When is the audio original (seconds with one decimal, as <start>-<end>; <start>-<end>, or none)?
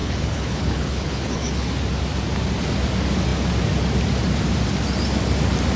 1.7-5.8